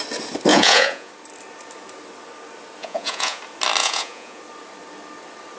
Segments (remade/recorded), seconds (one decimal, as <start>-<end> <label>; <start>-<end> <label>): 0.0-0.5 recorded; 0.5-1.1 remade; 1.1-2.8 recorded; 2.8-3.4 remade; 3.4-3.8 recorded; 3.8-4.4 remade; 4.4-5.6 recorded

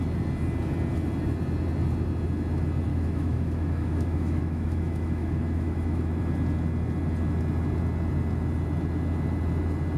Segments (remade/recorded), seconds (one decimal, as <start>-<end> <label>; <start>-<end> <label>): 0.0-2.9 recorded; 2.9-6.2 remade; 6.2-10.0 recorded

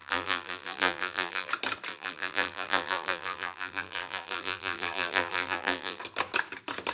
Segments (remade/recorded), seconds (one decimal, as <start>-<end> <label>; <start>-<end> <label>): 0.0-1.5 remade; 1.5-1.9 recorded; 1.9-6.0 remade; 6.0-6.9 recorded